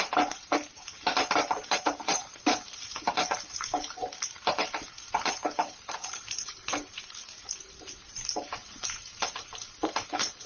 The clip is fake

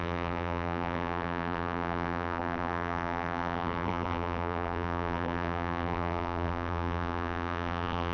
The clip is fake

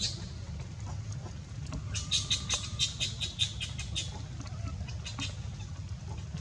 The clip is real